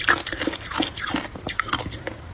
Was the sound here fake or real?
real